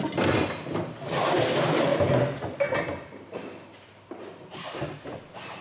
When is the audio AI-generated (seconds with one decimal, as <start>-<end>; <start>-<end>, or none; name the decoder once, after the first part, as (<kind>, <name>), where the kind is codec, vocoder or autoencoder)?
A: none